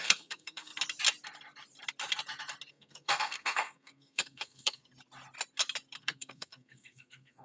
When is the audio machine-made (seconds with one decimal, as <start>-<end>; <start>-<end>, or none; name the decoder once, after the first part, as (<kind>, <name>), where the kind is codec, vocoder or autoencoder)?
0.0-0.7 (codec, SNAC); 2.7-4.9; 6.0-7.4